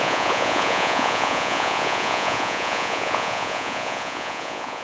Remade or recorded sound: remade